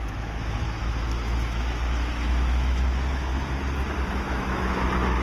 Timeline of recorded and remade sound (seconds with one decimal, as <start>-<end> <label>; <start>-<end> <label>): 0.0-3.3 remade; 3.3-4.1 recorded; 4.1-5.2 remade